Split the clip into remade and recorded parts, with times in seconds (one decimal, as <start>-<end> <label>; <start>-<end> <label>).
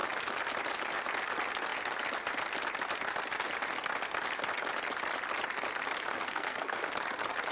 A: 0.0-6.1 recorded; 6.1-6.9 remade; 6.9-7.5 recorded